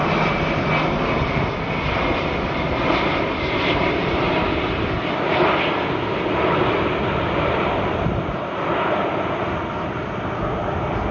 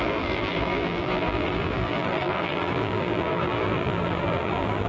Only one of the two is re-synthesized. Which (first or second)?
second